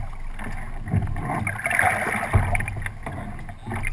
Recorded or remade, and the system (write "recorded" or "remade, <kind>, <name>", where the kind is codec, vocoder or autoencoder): recorded